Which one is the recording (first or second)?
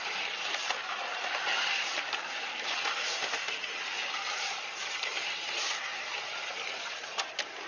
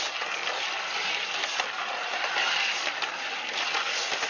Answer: second